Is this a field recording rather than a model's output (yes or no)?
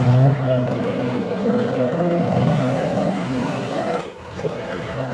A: no